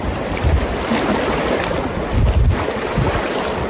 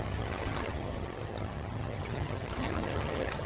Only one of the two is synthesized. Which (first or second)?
second